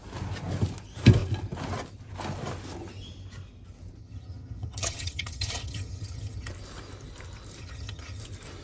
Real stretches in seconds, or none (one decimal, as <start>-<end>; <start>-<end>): 0.0-4.0; 6.5-7.6; 8.2-8.6